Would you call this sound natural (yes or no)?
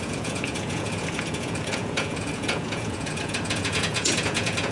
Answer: no